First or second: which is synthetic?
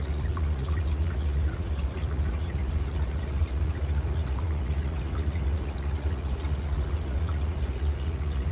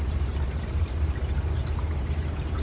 first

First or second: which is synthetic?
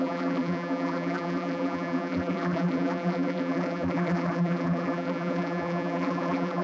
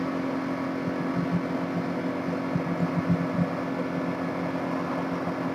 first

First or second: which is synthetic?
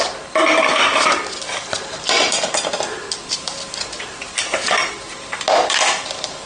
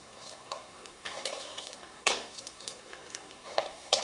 second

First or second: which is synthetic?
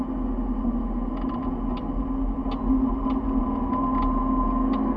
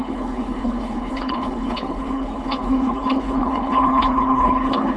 second